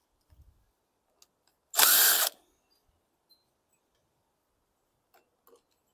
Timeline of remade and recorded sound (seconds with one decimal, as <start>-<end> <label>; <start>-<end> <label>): 0.0-5.9 recorded